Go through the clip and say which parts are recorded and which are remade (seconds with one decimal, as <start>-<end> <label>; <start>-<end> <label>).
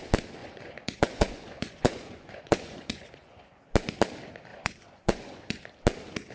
0.0-0.4 recorded; 0.4-3.6 remade; 3.6-4.5 recorded; 4.5-5.6 remade; 5.6-6.3 recorded